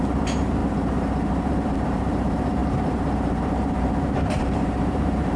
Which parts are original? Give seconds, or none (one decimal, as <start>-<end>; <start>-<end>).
0.6-1.3